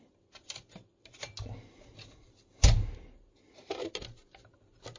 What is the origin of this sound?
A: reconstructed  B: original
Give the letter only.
B